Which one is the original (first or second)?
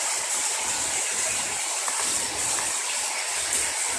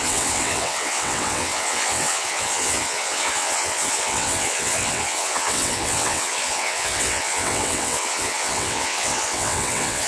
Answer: first